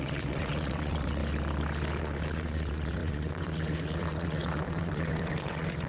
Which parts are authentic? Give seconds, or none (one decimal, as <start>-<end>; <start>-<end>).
1.2-2.0